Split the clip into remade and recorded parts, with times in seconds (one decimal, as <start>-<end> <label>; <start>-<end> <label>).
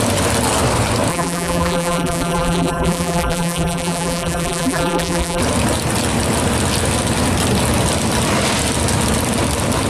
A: 0.0-1.1 recorded; 1.1-5.4 remade; 5.4-9.9 recorded